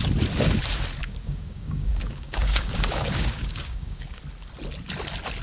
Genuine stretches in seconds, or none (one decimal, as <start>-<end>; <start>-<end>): 0.0-1.0; 4.2-5.4